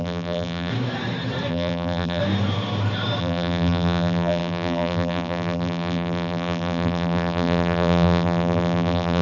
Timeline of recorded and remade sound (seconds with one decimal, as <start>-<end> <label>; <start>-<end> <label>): 0.0-0.7 remade; 0.7-1.5 recorded; 1.5-2.2 remade; 2.2-3.2 recorded; 3.2-9.2 remade